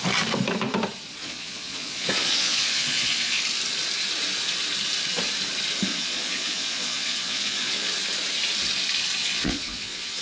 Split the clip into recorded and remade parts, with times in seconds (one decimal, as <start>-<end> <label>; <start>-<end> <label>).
0.0-1.2 recorded; 1.2-3.4 remade; 3.4-5.9 recorded; 5.9-7.9 remade; 7.9-9.2 recorded; 9.2-10.2 remade